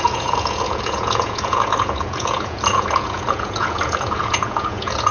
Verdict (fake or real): fake